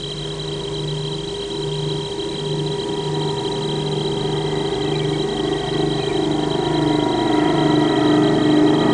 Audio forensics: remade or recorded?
recorded